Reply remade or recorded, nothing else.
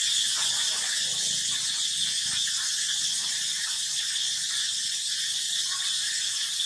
remade